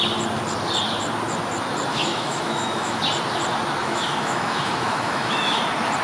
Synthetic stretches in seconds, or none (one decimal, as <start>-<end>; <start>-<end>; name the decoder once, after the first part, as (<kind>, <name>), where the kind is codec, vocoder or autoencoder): 1.9-3.0 (autoencoder, DAC-VAE); 3.8-5.6